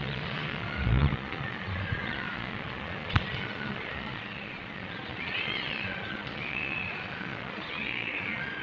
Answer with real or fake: fake